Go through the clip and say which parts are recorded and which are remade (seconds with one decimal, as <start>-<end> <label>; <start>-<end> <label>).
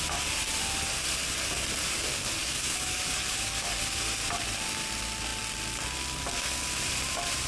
0.0-2.4 recorded; 2.4-3.7 remade; 3.7-7.5 recorded